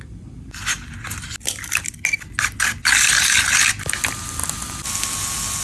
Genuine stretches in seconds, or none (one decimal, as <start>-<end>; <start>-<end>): 0.0-4.4; 4.9-5.6